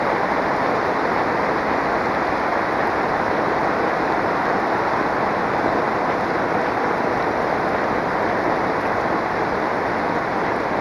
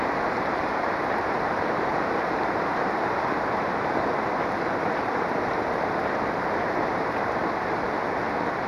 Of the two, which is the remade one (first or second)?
second